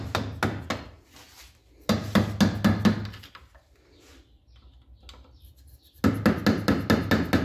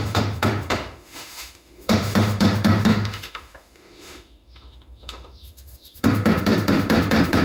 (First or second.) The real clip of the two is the first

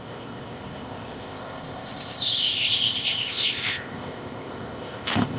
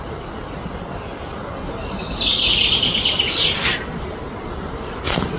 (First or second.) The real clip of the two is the second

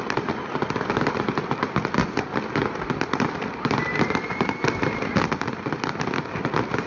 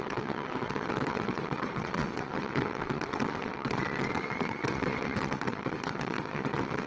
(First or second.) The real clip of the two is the first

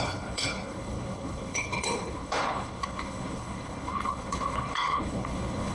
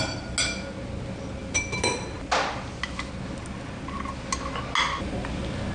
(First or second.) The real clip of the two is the second